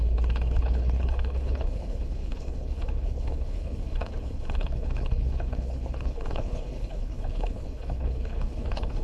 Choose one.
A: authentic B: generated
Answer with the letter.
B